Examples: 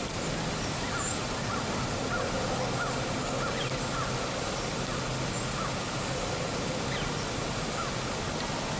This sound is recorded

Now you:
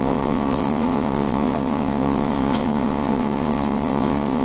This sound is remade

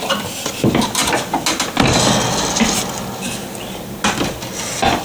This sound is recorded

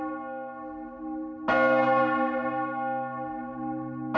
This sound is recorded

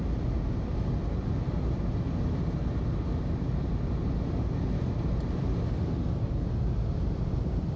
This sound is recorded